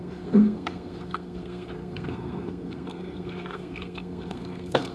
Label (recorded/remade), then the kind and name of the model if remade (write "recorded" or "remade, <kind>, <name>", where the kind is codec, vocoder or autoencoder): remade, codec, SNAC